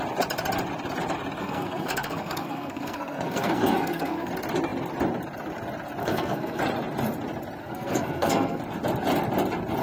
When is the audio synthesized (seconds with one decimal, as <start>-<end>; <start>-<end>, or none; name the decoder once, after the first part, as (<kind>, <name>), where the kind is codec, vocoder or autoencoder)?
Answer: 1.4-4.3 (codec, SNAC); 6.0-6.6; 7.6-8.6